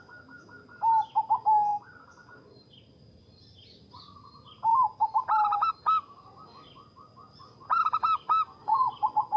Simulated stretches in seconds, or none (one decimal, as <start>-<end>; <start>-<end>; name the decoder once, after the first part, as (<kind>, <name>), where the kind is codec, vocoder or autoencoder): 8.6-9.4 (vocoder, Vocos)